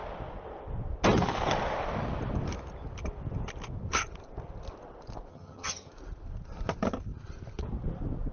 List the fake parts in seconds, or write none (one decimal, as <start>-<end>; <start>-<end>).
5.3-5.9